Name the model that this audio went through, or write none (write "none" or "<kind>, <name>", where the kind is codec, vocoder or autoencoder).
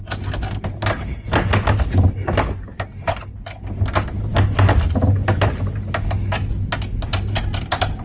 none